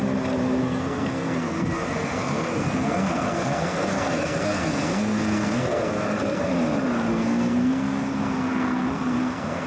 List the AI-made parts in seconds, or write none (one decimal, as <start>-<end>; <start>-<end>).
0.6-6.5; 7.1-9.7